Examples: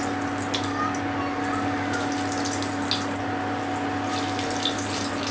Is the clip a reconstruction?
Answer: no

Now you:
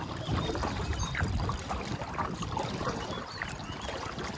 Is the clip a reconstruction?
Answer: no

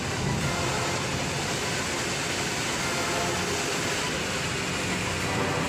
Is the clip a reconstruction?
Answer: no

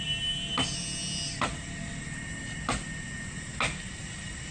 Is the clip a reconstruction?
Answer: no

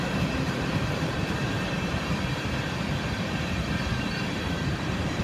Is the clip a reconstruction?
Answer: yes